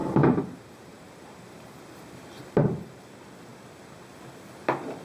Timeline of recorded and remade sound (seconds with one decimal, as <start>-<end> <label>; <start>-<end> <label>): 0.0-3.0 remade; 3.0-5.0 recorded